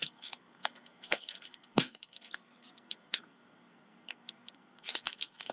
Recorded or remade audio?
remade